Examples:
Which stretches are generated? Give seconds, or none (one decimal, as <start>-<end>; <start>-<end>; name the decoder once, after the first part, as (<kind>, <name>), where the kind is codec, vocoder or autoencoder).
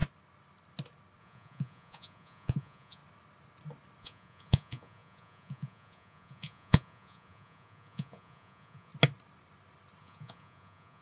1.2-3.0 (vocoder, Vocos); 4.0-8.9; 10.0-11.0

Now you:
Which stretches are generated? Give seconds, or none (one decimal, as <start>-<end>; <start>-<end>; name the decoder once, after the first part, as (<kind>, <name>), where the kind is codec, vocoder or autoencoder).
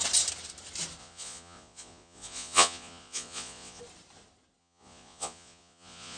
1.0-3.8 (vocoder, Vocos); 4.6-6.2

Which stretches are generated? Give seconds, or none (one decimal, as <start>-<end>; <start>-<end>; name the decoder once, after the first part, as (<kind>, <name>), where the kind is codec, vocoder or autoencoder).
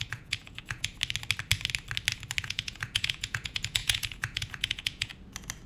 0.0-0.9 (vocoder, Vocos); 2.4-5.1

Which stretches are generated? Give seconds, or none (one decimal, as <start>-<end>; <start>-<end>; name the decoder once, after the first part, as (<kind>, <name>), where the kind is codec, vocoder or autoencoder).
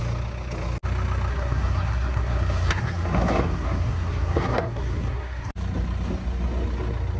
1.3-5.5 (codec, SNAC)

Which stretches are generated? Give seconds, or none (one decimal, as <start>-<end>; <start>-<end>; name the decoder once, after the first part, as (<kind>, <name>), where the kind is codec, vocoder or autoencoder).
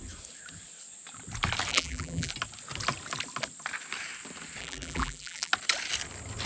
1.7-2.3 (vocoder, BigVGAN v2); 4.6-5.5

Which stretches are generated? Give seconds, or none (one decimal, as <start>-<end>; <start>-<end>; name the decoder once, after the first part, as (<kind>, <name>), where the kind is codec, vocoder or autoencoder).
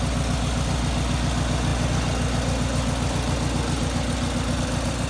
none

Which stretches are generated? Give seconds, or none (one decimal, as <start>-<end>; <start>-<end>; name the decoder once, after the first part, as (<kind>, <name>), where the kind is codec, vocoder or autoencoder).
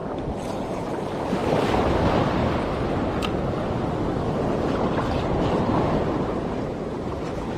0.5-1.4 (vocoder, BigVGAN v2); 2.0-2.4; 5.6-7.6